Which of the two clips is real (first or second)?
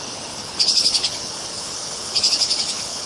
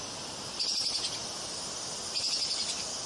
second